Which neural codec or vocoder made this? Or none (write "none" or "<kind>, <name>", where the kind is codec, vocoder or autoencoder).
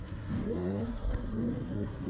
codec, SNAC